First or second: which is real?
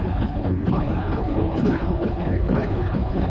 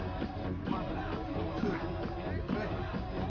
second